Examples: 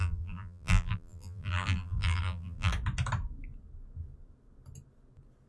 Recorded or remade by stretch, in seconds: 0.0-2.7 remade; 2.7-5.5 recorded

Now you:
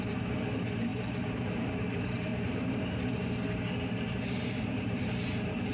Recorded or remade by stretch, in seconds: 0.0-5.7 remade